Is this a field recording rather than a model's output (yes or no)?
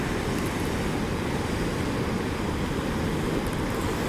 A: yes